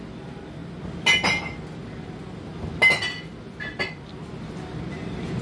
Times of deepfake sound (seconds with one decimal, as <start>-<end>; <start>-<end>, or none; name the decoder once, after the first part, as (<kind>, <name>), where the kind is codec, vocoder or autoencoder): none